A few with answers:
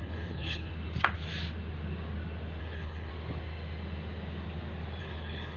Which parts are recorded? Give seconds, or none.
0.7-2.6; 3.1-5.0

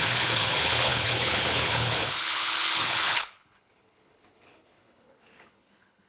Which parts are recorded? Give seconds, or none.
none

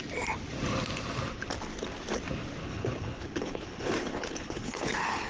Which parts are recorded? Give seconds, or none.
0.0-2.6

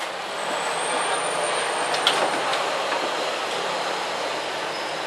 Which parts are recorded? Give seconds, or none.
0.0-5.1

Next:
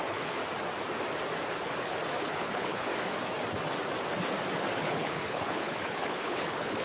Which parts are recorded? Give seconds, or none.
0.4-2.2; 2.9-4.8